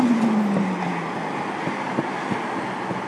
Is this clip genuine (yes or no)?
yes